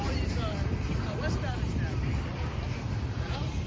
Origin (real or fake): real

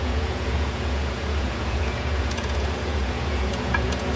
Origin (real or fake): fake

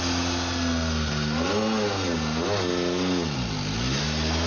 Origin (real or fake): real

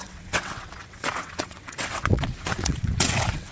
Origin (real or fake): fake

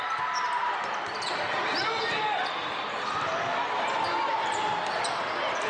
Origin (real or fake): real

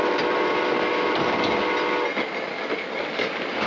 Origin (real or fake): real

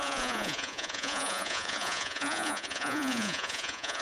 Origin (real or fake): fake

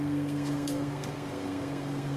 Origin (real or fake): fake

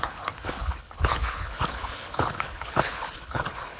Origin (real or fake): fake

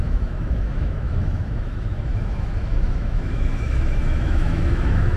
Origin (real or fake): fake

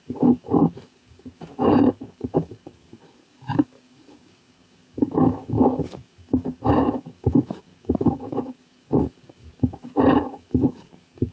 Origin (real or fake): fake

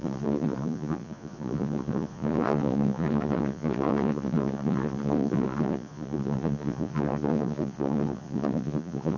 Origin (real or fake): fake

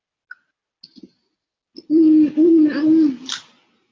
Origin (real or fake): real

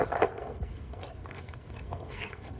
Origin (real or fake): fake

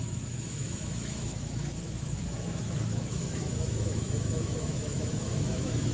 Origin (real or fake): fake